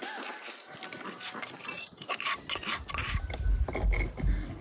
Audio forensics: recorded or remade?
recorded